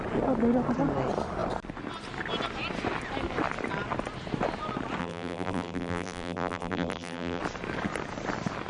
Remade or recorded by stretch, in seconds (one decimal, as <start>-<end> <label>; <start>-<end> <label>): 0.0-5.0 recorded; 5.0-7.4 remade; 7.4-8.7 recorded